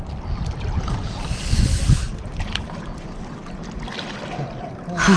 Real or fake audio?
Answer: real